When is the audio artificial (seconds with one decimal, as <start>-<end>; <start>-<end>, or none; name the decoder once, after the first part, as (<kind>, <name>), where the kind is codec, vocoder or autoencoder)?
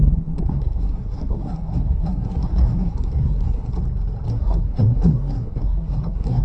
0.0-3.7 (codec, SNAC); 4.3-6.4